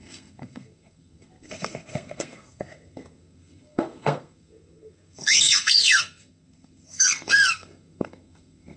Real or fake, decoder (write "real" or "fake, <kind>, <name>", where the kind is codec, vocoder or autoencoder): fake, codec, SNAC